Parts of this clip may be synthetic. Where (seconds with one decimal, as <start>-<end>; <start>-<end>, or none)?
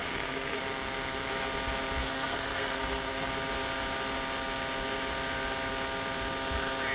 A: 0.0-0.6; 2.0-3.3